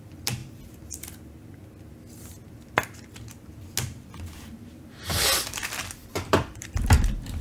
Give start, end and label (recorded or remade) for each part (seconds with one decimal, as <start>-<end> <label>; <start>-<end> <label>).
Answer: 0.0-0.4 remade; 0.4-4.7 recorded; 4.7-7.4 remade